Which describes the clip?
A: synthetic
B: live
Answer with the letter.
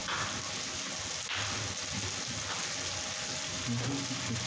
B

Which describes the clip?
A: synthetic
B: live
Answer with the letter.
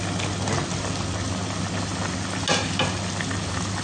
B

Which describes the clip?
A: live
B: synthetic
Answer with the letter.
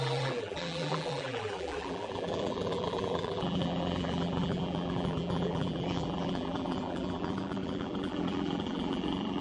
B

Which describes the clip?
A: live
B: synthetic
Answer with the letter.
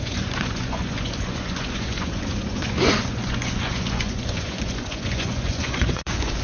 B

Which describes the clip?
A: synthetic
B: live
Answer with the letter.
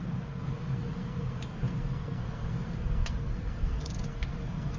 A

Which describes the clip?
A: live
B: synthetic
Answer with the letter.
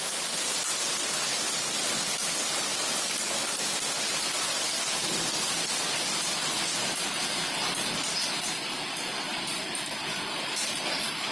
A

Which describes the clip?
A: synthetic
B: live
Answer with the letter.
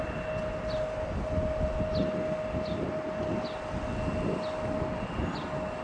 B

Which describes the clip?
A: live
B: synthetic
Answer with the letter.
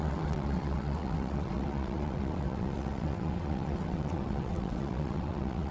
B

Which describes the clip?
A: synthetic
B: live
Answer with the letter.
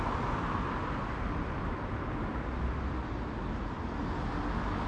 B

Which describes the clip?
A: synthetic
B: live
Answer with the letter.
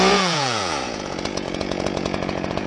A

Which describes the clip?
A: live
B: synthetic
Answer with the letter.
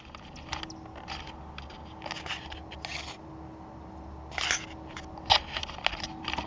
A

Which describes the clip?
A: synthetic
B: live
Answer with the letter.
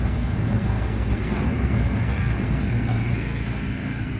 A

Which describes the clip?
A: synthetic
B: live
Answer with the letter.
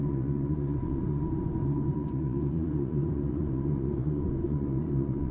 A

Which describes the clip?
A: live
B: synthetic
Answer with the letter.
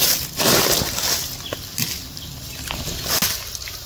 A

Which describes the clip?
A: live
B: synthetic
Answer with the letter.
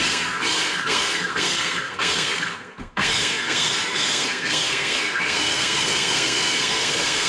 B